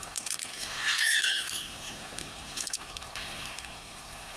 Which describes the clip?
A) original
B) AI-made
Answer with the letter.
B